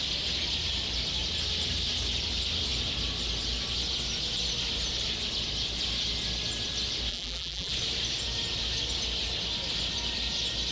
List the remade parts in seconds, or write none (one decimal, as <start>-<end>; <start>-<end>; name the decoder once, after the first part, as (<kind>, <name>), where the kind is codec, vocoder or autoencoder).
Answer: 7.1-7.7 (vocoder, BigVGAN v2)